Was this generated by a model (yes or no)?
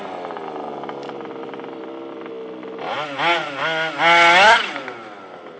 no